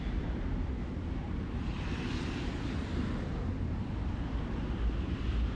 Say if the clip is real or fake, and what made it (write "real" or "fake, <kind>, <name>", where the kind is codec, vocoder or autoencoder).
real